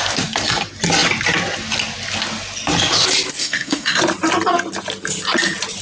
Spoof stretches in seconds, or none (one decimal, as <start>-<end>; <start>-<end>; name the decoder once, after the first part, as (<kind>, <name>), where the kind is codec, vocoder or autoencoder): 3.4-4.0 (codec, SNAC)